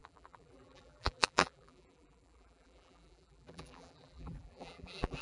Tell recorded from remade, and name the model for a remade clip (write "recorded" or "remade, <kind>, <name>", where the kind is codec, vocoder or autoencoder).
remade, vocoder, BigVGAN v2